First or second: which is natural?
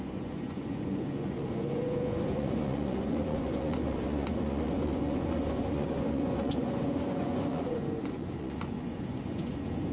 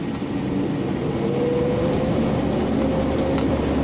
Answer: second